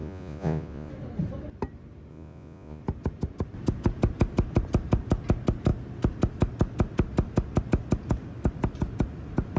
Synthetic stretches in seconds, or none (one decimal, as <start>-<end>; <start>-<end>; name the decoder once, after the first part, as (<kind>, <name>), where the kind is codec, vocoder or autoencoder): 0.0-0.9 (vocoder, Vocos); 2.1-2.8